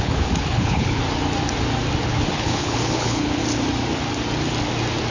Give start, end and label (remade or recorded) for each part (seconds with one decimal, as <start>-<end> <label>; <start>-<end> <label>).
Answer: 0.0-1.0 remade; 1.0-2.0 recorded; 2.0-3.4 remade; 3.4-5.1 recorded